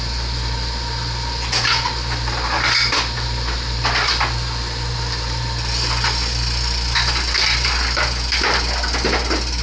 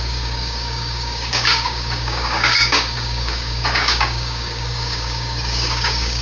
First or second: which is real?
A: first